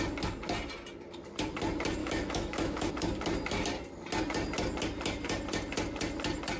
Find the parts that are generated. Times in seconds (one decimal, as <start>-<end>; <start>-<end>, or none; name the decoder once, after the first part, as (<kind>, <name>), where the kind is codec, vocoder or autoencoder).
2.0-2.9 (autoencoder, DAC-VAE)